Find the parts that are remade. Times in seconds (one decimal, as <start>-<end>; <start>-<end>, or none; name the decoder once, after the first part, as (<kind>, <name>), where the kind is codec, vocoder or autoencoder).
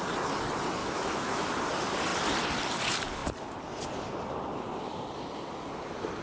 0.8-1.5 (autoencoder, DAC-VAE)